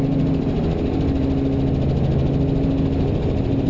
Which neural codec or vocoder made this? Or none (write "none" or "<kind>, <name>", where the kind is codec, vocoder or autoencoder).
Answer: none